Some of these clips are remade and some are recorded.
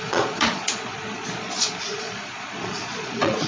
remade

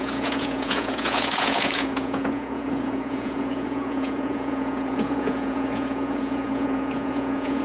remade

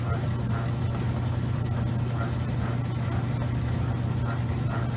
recorded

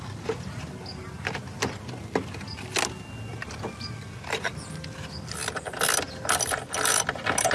recorded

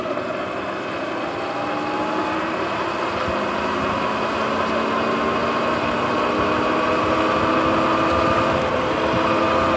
recorded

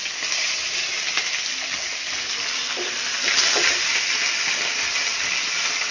recorded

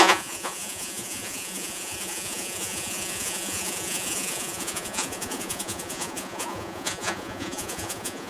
remade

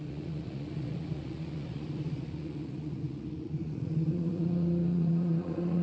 remade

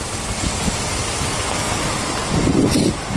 recorded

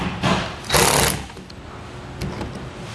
recorded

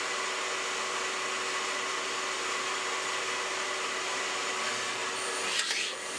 recorded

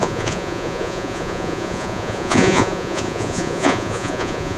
remade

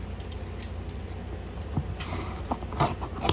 recorded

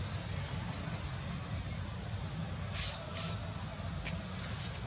recorded